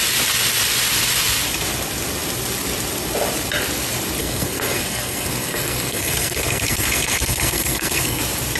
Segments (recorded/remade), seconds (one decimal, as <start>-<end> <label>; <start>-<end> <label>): 0.0-4.2 recorded; 4.2-8.2 remade; 8.2-8.6 recorded